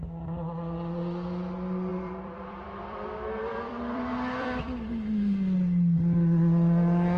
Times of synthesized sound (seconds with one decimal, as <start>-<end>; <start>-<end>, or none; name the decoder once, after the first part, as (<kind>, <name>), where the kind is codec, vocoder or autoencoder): 1.9-5.0 (vocoder, BigVGAN v2)

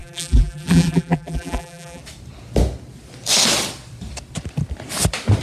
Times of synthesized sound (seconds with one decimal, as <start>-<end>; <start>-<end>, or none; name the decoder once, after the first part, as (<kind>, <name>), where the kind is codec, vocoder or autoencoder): 0.0-2.0 (vocoder, BigVGAN v2)

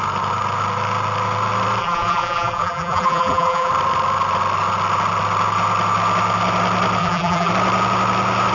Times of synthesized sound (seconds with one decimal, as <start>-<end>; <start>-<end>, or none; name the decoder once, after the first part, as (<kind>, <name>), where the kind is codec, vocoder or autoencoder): 1.8-3.7 (vocoder, BigVGAN v2); 7.0-7.5

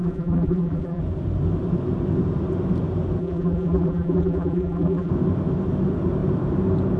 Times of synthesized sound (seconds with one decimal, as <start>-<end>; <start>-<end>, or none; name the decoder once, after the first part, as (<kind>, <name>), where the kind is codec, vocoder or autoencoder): 0.0-1.0 (vocoder, BigVGAN v2); 3.2-5.1

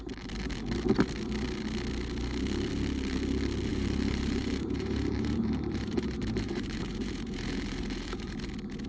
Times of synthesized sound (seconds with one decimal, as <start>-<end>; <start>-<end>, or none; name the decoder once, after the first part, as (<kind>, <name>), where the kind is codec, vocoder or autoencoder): 3.7-8.5 (vocoder, BigVGAN v2)